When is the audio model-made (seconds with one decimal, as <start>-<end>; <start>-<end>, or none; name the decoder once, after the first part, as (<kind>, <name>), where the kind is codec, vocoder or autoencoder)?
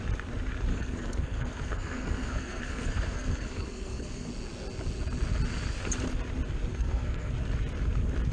0.7-4.3 (codec, SNAC); 6.7-7.3